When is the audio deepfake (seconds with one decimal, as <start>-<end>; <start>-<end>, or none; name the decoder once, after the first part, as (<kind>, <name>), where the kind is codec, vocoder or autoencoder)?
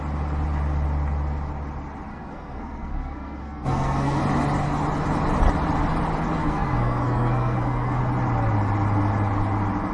2.1-4.2 (codec, SNAC); 6.4-8.0